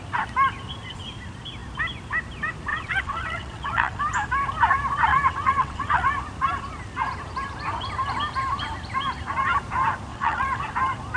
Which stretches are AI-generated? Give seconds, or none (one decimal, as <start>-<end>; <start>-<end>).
2.7-4.0; 5.1-6.1; 10.1-10.6